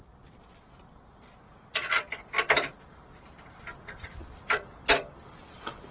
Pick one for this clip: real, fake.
real